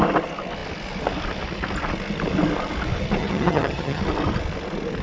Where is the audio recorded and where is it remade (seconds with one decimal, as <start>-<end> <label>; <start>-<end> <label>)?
0.0-3.2 recorded; 3.2-4.0 remade; 4.0-5.0 recorded